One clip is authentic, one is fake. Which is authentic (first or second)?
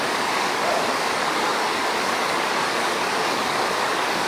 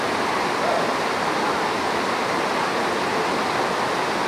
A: second